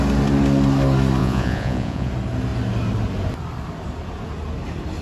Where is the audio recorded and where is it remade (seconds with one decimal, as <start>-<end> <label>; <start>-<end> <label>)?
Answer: 0.0-1.2 recorded; 1.2-2.1 remade; 2.1-5.0 recorded